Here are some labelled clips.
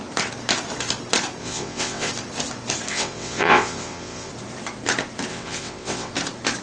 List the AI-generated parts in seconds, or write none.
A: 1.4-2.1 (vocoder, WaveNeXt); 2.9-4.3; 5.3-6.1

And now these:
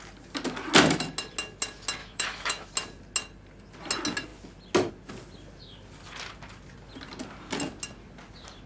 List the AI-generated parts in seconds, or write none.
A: 2.0-2.7 (autoencoder, DAC-VAE)

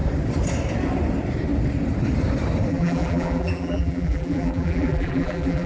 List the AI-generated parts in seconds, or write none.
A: 2.7-5.7 (vocoder, BigVGAN v2)